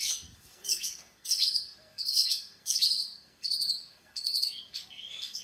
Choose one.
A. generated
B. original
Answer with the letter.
A